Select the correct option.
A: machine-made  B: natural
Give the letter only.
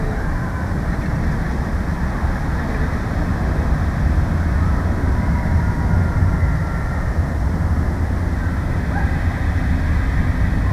B